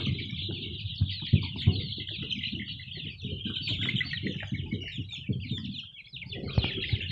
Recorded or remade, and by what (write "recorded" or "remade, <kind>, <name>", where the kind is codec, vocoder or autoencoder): recorded